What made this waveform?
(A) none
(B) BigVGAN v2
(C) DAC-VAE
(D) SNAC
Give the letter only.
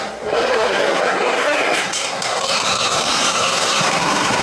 D